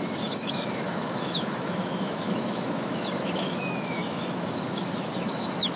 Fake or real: fake